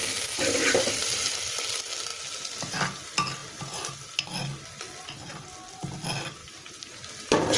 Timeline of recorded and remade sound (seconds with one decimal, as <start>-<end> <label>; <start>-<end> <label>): 0.0-0.9 remade; 0.9-6.4 recorded; 6.4-7.0 remade; 7.0-7.6 recorded